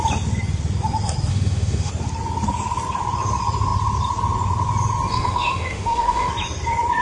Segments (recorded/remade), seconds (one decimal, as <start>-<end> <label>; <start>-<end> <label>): 0.0-1.3 recorded; 1.3-1.9 remade; 1.9-5.1 recorded; 5.1-6.3 remade; 6.3-7.0 recorded